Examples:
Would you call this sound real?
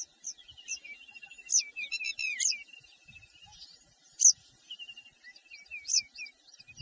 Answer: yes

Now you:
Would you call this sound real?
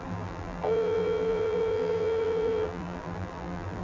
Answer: no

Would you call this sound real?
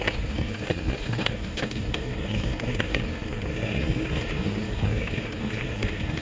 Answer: no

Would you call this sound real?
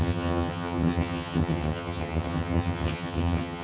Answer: no